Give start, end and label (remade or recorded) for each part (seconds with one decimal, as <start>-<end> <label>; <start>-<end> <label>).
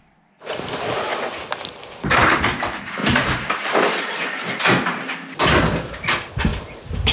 0.0-3.0 recorded; 3.0-5.3 remade; 5.3-6.5 recorded; 6.5-7.1 remade